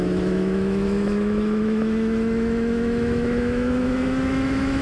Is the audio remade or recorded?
remade